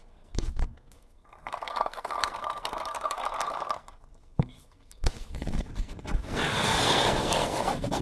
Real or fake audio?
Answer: fake